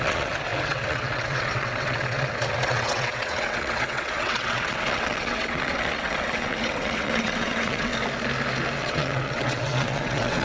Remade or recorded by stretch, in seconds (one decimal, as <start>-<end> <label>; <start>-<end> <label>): 0.0-7.9 remade; 7.9-8.8 recorded; 8.8-10.4 remade